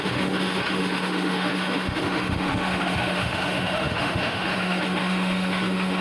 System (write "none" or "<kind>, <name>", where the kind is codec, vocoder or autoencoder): autoencoder, DAC-VAE